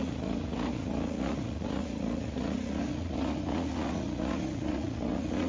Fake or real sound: fake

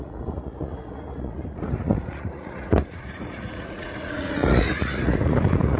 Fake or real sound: fake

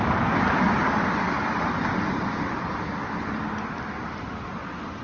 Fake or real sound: real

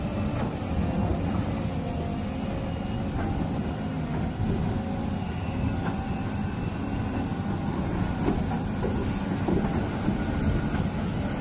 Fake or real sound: real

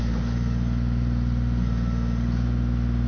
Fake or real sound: real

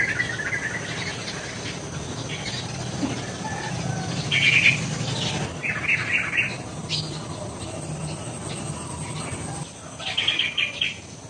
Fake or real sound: real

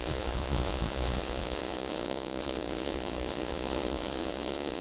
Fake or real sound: fake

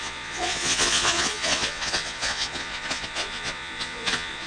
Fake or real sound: fake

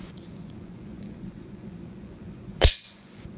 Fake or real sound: fake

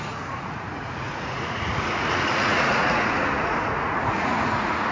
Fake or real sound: fake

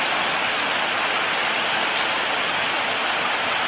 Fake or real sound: real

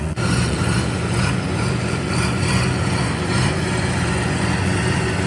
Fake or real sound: fake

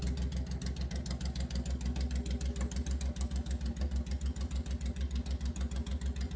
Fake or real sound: real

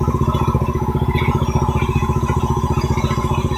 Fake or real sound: fake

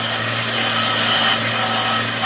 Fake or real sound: real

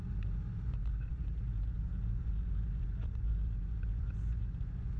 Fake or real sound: fake